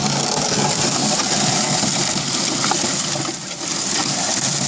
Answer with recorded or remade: recorded